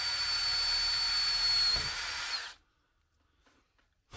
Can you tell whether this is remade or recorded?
recorded